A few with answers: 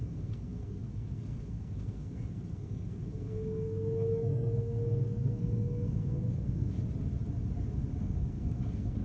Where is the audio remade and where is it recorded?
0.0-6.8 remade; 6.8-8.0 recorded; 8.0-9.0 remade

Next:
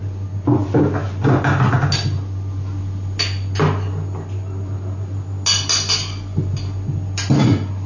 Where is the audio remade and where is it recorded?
0.0-7.9 recorded

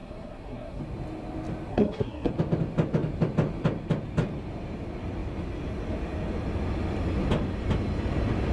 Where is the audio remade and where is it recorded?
0.0-0.8 remade; 0.8-1.7 recorded; 1.7-2.3 remade; 2.3-8.5 recorded

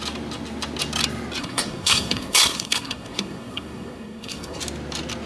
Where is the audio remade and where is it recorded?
0.0-1.4 recorded; 1.4-4.6 remade; 4.6-5.3 recorded

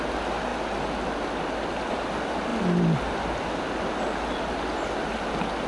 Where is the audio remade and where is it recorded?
0.0-5.7 recorded

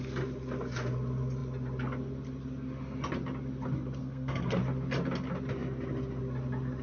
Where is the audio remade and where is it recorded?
0.0-4.0 recorded; 4.0-4.6 remade; 4.6-6.8 recorded